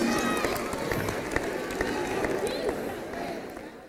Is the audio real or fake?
real